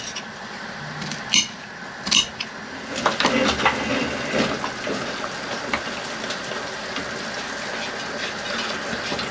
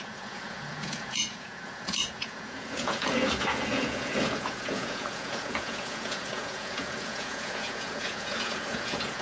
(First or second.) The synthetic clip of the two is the second